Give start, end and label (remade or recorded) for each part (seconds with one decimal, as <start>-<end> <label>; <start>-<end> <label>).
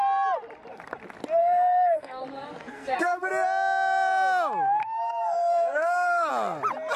0.0-1.4 recorded; 1.4-2.2 remade; 2.2-2.6 recorded; 2.6-3.3 remade; 3.3-4.8 recorded; 4.8-6.3 remade; 6.3-7.0 recorded